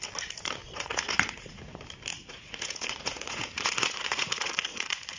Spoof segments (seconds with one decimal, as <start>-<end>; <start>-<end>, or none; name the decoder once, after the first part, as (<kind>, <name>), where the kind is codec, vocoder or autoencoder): 0.6-1.7 (vocoder, Vocos); 2.1-5.2